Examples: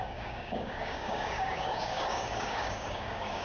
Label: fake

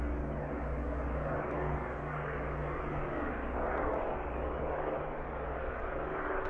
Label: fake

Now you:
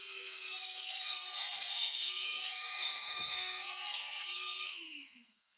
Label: fake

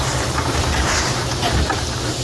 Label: real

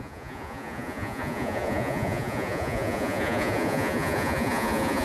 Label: fake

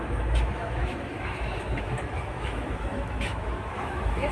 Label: fake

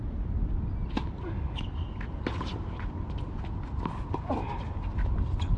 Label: real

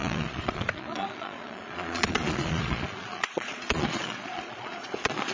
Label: fake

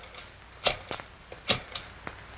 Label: real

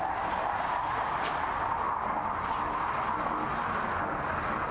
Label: real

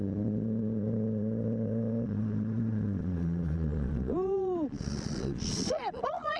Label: fake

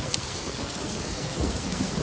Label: fake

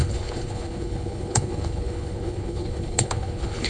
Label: fake